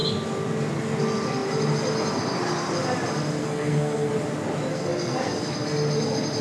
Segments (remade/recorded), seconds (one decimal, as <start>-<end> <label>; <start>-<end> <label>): 0.0-3.4 recorded; 3.4-4.1 remade; 4.1-4.7 recorded; 4.7-5.3 remade; 5.3-6.4 recorded